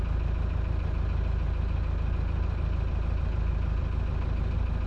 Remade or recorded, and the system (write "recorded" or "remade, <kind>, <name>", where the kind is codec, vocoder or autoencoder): recorded